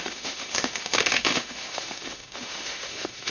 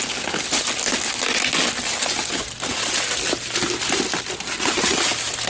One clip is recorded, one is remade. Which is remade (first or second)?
first